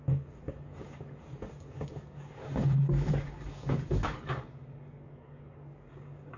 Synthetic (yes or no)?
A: yes